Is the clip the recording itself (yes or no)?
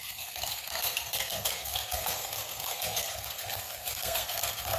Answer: no